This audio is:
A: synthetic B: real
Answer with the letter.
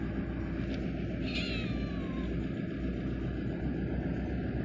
B